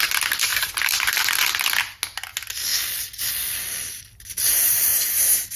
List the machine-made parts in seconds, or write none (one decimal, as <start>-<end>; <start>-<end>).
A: 0.5-1.7; 2.7-3.3; 4.9-5.6